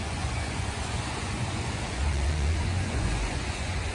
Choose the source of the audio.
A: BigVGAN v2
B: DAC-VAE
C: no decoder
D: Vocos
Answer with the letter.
D